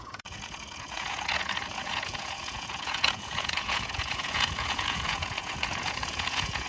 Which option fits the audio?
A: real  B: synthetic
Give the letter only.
B